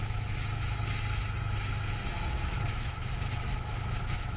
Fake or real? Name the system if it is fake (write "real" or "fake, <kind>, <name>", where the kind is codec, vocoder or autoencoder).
fake, autoencoder, DAC-VAE